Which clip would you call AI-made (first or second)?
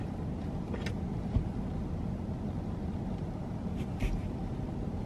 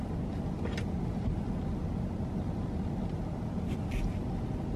first